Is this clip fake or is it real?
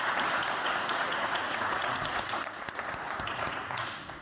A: fake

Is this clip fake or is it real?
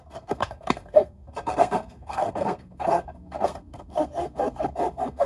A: fake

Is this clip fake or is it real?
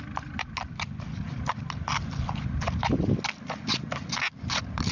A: real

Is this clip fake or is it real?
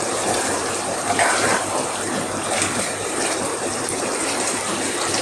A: fake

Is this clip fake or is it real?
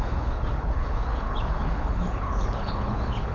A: fake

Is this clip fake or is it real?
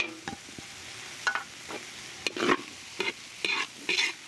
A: real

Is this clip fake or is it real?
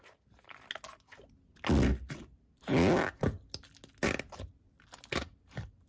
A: real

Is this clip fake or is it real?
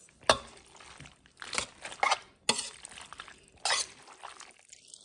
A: real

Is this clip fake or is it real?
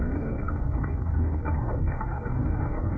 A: fake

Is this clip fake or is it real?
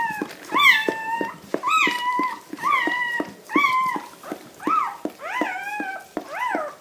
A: real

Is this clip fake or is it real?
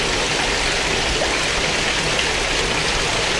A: real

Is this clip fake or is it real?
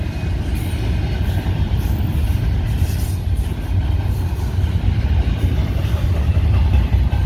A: real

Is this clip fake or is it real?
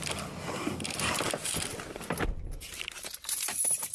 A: real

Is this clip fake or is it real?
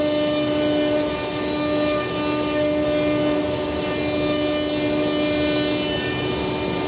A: real